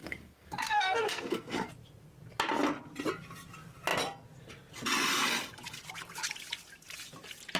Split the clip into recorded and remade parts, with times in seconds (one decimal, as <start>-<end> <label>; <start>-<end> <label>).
0.0-1.7 remade; 1.7-7.6 recorded